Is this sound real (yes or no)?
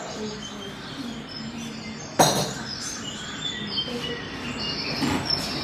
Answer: yes